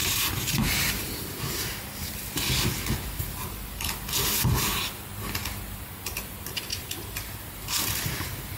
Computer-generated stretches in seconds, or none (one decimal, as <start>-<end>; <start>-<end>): 0.0-1.4